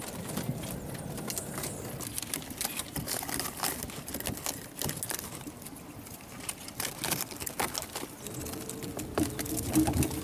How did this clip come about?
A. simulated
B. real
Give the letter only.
B